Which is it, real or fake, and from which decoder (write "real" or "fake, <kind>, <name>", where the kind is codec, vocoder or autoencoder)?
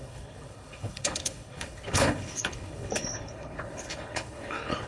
fake, codec, HILCodec